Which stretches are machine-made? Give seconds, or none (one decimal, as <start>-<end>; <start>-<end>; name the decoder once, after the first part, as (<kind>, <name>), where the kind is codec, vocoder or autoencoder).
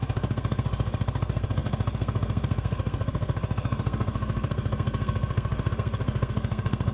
0.0-6.9 (codec, SNAC)